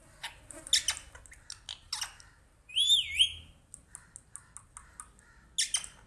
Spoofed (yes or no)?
no